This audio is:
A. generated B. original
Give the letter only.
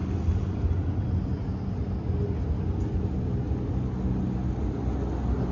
B